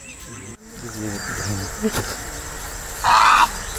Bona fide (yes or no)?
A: yes